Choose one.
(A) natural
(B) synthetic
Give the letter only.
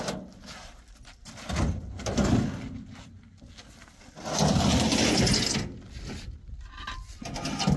A